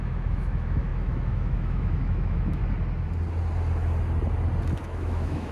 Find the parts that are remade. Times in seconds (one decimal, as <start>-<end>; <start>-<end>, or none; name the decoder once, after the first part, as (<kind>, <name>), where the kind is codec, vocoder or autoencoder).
0.0-2.6 (autoencoder, DAC-VAE); 4.8-5.5